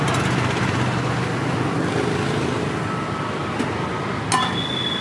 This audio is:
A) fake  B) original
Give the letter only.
B